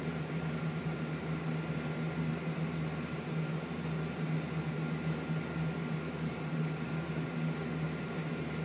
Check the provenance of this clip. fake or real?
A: real